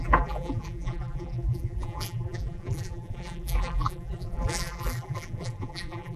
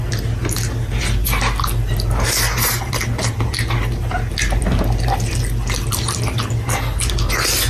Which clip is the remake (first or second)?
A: first